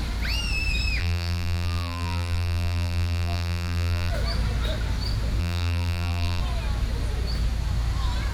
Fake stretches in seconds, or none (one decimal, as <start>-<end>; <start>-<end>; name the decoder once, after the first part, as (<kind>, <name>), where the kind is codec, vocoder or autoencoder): 1.0-4.1 (vocoder, BigVGAN v2); 5.4-6.4